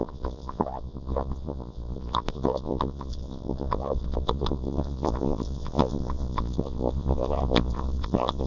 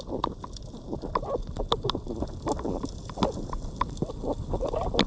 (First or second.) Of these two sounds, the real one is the second